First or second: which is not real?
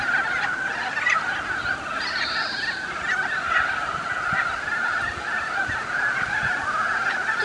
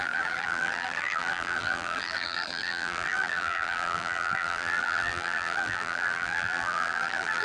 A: second